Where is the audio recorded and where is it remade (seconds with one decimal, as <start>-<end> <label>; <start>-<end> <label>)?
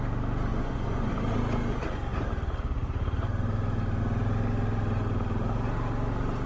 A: 0.0-0.5 recorded; 0.5-1.1 remade; 1.1-6.5 recorded